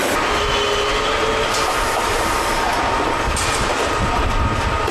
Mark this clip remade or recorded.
recorded